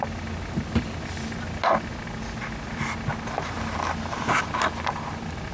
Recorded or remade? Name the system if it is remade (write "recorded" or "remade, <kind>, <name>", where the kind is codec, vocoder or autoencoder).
recorded